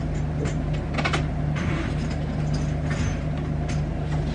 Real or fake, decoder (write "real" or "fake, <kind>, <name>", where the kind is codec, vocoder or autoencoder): real